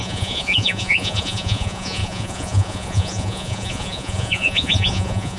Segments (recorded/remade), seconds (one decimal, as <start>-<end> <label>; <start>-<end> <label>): 0.0-5.4 remade

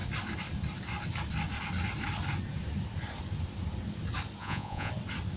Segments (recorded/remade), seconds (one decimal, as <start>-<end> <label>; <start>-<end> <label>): 0.0-4.4 recorded; 4.4-4.9 remade; 4.9-5.4 recorded

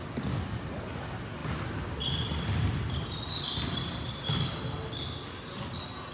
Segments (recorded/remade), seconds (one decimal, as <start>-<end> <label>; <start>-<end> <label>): 0.0-6.1 recorded

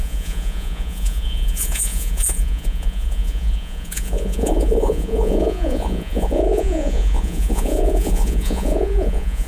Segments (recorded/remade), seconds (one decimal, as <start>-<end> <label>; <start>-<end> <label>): 0.0-9.5 remade

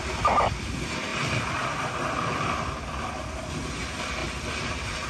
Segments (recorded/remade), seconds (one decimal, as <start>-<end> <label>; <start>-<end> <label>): 0.0-5.1 recorded